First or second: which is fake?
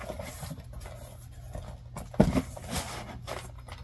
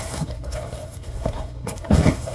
second